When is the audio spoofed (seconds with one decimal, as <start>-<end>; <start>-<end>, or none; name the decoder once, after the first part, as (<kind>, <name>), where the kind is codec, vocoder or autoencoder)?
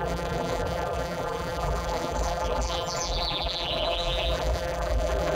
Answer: 0.0-5.4 (vocoder, BigVGAN v2)